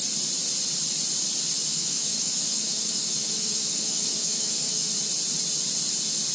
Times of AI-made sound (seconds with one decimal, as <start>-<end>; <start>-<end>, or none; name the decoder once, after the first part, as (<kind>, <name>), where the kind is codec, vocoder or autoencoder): 1.7-4.9 (autoencoder, DAC-VAE)